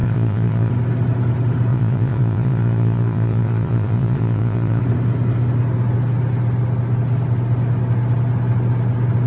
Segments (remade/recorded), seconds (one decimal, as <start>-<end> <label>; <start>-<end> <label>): 0.0-0.7 remade; 0.7-1.7 recorded; 1.7-4.8 remade; 4.8-9.3 recorded